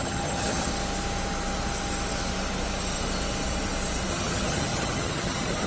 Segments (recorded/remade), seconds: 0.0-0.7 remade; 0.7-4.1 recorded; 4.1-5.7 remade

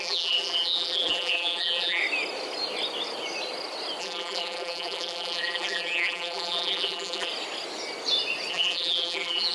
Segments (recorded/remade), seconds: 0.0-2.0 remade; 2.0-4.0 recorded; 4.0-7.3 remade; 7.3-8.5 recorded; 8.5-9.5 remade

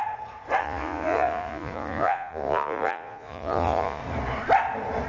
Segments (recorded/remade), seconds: 0.0-0.6 recorded; 0.6-4.0 remade; 4.0-5.1 recorded

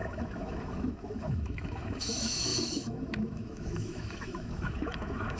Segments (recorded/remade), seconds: 0.0-5.4 remade

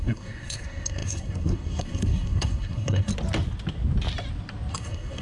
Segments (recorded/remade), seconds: 0.0-3.1 remade; 3.1-4.7 recorded; 4.7-5.2 remade

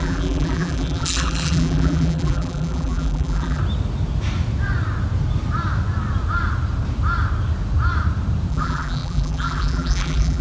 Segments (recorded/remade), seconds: 0.0-3.6 remade; 3.6-8.5 recorded; 8.5-10.4 remade